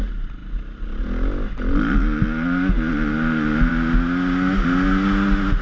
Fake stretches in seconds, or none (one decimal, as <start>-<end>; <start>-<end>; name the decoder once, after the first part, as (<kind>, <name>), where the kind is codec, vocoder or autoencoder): none